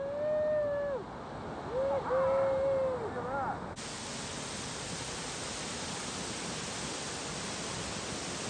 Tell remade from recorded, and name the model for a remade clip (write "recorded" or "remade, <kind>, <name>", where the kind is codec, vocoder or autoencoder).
recorded